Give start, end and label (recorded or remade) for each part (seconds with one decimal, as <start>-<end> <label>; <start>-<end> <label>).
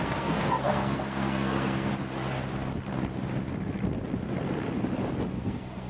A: 0.0-1.9 remade; 1.9-5.3 recorded; 5.3-5.9 remade